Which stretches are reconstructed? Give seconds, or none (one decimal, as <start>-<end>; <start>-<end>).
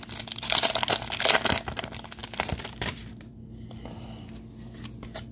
2.2-3.7